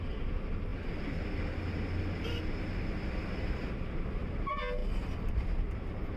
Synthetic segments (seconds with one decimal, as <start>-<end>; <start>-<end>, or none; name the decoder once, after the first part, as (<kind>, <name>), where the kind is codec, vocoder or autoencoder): none